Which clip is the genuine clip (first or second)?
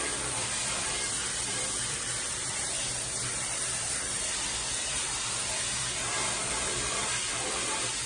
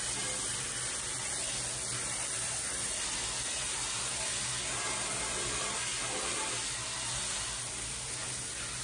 second